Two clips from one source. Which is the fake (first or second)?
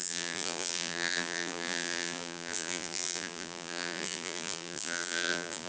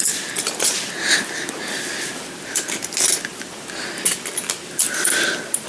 first